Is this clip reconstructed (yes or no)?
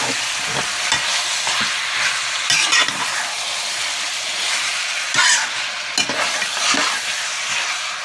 no